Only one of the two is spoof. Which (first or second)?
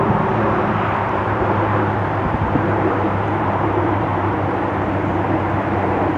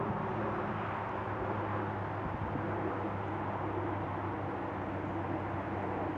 first